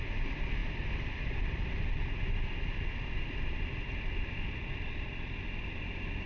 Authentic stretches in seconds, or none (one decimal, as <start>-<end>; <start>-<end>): 0.0-6.3

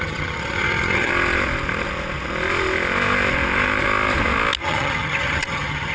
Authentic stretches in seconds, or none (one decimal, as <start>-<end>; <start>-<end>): 1.1-4.6

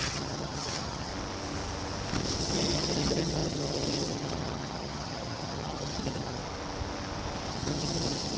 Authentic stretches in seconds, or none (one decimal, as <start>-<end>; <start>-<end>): 1.1-2.4; 6.4-7.5

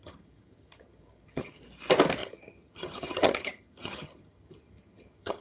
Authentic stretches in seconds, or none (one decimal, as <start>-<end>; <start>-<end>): 1.6-2.2

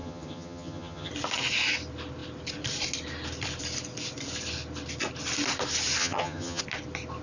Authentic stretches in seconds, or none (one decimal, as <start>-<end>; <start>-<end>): 1.1-6.0; 6.6-7.2